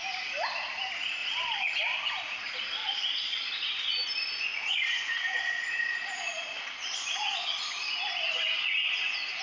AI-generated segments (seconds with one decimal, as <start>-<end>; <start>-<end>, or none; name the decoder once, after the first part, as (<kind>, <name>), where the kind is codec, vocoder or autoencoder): 1.2-1.8 (vocoder, Vocos); 2.8-3.5; 4.5-8.0